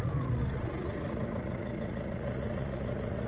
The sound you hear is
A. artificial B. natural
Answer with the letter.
A